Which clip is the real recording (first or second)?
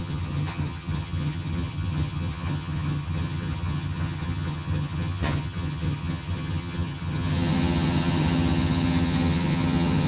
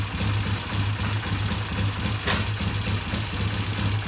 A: second